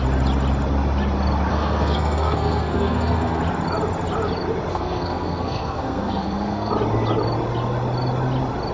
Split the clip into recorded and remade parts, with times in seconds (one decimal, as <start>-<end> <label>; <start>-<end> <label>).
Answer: 0.0-1.5 recorded; 1.5-3.4 remade; 3.4-4.7 recorded; 4.7-6.7 remade; 6.7-8.7 recorded